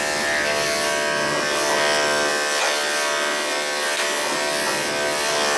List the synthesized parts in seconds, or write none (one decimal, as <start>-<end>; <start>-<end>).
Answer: none